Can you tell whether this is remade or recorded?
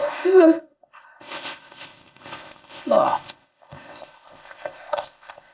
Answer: remade